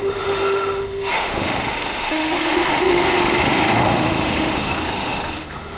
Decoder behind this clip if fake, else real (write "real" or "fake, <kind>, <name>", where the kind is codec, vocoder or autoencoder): fake, autoencoder, DAC-VAE